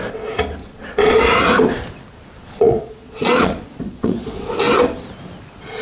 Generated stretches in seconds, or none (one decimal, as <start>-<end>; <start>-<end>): 0.6-1.2; 2.4-4.5